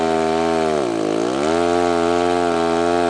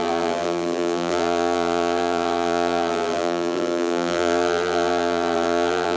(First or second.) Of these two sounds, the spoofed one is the second